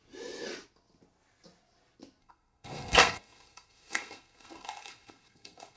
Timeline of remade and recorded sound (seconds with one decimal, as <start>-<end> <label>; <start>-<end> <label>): 0.0-2.2 recorded; 2.2-5.8 remade